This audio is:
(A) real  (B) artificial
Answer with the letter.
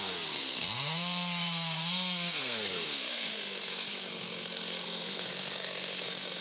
B